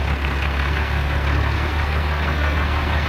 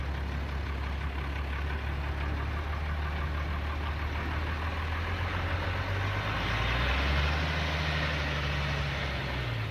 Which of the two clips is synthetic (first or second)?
first